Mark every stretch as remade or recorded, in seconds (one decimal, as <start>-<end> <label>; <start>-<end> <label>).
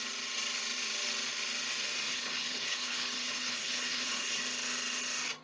0.0-2.1 recorded; 2.1-4.4 remade; 4.4-5.4 recorded